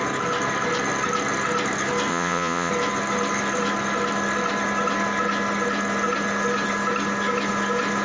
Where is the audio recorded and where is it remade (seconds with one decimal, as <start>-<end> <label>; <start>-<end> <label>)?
0.0-2.1 recorded; 2.1-2.7 remade; 2.7-8.0 recorded